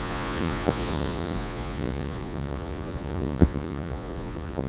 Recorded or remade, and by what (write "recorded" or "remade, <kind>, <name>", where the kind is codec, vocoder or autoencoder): remade, vocoder, Vocos